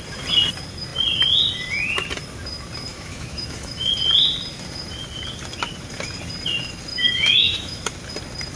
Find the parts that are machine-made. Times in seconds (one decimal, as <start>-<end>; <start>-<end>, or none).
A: 2.9-3.9; 6.9-7.8